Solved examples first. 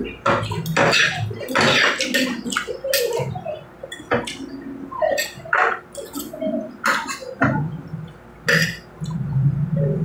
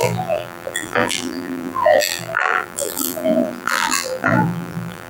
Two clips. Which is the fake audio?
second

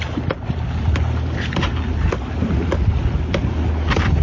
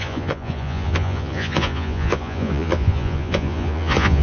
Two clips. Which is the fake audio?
second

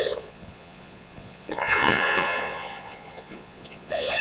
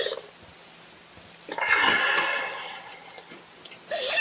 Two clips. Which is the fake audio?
first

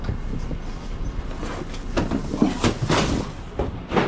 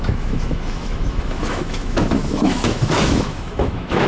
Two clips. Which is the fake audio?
second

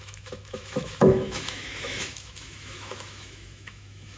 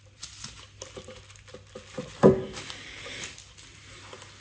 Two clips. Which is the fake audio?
first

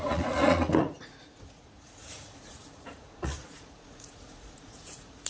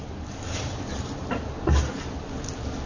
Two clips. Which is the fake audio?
first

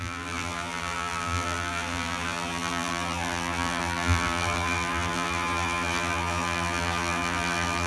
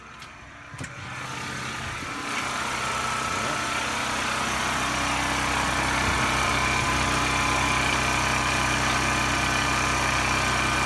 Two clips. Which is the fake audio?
first